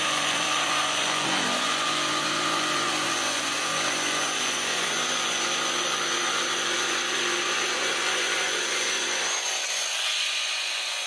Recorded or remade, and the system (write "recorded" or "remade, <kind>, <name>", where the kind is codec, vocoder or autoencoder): remade, vocoder, Vocos